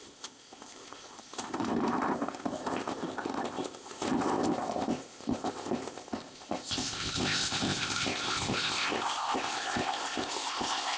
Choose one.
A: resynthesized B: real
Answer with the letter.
A